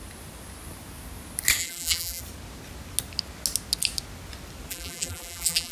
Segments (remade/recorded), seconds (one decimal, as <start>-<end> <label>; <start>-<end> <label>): 0.0-1.6 recorded; 1.6-2.2 remade; 2.2-4.7 recorded; 4.7-5.7 remade